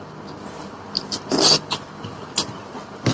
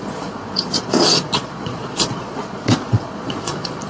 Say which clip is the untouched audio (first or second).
first